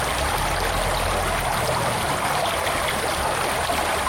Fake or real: real